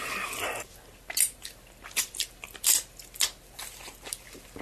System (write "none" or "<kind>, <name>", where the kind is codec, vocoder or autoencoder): none